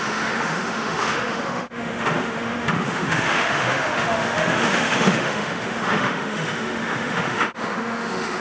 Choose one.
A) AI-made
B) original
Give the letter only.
A